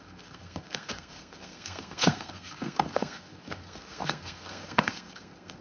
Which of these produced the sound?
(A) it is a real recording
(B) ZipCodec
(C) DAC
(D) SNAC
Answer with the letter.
D